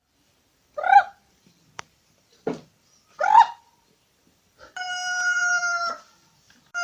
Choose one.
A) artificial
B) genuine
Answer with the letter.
A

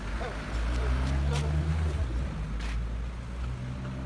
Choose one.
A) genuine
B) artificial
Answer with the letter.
A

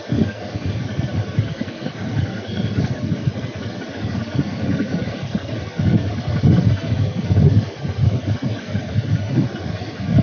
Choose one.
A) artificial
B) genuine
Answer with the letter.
A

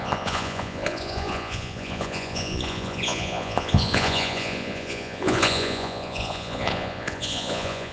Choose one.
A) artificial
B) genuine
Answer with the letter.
A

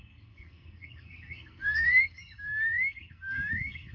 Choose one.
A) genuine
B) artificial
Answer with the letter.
B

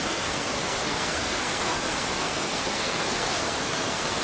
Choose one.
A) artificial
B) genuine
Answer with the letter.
A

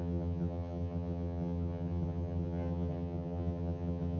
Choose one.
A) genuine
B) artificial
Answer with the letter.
B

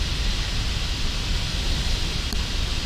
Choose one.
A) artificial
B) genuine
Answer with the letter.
B